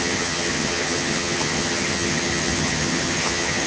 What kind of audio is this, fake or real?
fake